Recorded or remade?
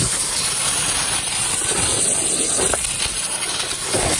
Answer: recorded